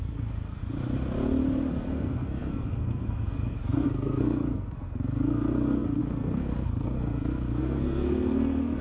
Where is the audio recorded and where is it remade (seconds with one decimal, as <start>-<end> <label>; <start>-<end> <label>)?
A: 0.0-0.6 remade; 0.6-1.7 recorded; 1.7-8.8 remade